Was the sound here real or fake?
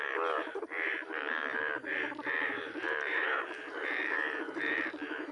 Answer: fake